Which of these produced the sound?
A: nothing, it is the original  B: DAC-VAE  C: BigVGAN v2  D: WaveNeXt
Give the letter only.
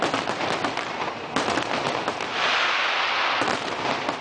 A